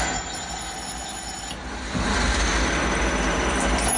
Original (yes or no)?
yes